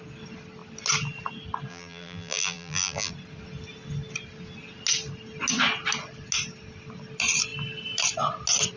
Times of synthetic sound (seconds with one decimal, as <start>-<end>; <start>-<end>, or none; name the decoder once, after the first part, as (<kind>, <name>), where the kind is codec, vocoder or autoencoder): 1.7-3.1 (vocoder, BigVGAN v2)